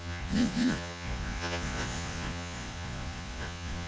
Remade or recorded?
remade